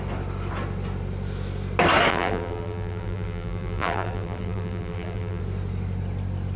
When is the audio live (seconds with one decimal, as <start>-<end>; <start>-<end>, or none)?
0.0-2.1; 5.4-6.6